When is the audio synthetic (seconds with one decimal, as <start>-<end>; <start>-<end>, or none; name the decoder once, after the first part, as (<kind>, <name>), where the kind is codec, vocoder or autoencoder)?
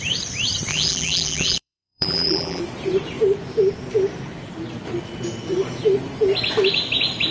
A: 0.7-2.6 (vocoder, BigVGAN v2)